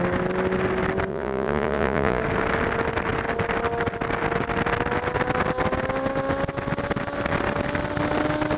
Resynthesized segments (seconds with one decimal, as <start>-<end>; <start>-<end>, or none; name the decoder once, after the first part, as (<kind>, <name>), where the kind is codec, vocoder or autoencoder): 1.1-2.2 (vocoder, Vocos)